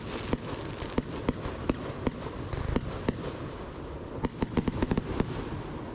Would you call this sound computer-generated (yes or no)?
no